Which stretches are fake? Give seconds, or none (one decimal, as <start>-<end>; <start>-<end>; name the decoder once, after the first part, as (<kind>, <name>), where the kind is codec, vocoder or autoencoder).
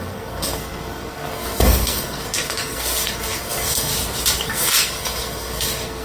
0.0-3.9 (codec, SNAC); 4.4-6.0